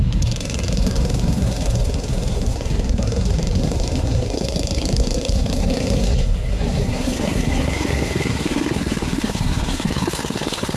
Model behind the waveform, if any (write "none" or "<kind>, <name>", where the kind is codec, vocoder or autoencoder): codec, SNAC